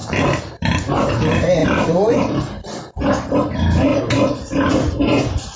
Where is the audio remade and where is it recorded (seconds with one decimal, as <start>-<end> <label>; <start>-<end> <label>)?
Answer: 0.0-1.6 recorded; 1.6-2.2 remade; 2.2-3.9 recorded; 3.9-4.7 remade; 4.7-5.6 recorded